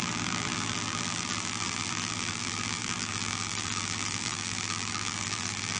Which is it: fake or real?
fake